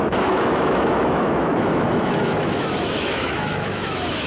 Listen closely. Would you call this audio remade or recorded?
remade